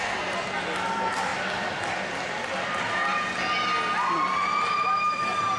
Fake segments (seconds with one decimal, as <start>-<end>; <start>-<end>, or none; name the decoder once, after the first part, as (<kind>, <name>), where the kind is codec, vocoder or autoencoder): none